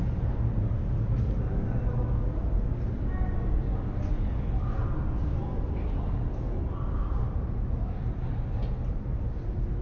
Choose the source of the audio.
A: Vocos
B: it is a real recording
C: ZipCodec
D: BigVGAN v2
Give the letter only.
B